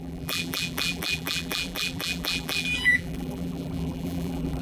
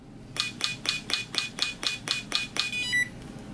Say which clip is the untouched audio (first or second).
second